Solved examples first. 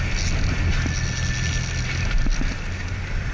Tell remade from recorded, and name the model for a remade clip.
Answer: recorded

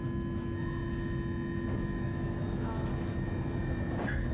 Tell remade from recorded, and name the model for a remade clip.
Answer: recorded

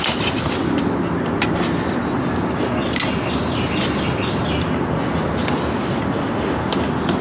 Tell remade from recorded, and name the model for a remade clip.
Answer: recorded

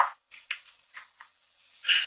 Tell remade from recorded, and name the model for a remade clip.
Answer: remade, vocoder, WaveNeXt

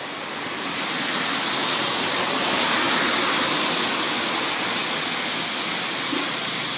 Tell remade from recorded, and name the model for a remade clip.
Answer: recorded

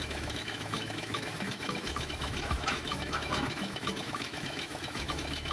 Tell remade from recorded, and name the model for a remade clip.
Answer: remade, autoencoder, DAC-VAE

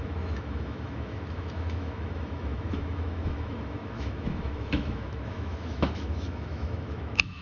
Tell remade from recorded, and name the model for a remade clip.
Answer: remade, autoencoder, DAC-VAE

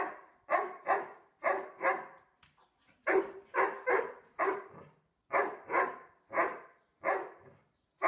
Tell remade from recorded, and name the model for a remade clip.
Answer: recorded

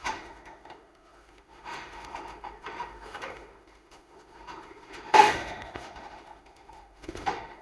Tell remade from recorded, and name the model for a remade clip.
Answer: remade, autoencoder, DAC-VAE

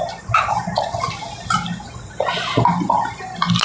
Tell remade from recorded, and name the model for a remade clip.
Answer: recorded